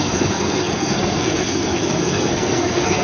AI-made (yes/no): yes